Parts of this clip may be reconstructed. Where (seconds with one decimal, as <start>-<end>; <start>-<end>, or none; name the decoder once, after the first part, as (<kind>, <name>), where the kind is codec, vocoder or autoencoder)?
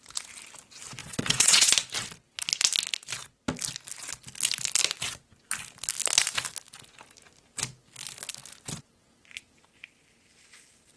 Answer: 1.0-1.7 (vocoder, WaveNeXt)